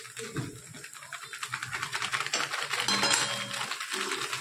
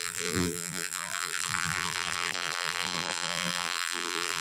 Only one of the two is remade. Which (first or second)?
second